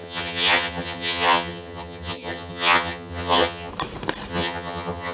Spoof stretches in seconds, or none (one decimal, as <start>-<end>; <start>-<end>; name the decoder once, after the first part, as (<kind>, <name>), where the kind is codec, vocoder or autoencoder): 0.0-3.7 (vocoder, HiFi-GAN); 4.3-5.1